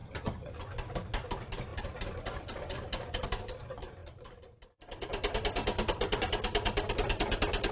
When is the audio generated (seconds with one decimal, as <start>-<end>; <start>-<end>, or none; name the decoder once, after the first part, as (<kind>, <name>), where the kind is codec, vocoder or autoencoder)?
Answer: 0.0-0.5 (vocoder, HiFi-GAN)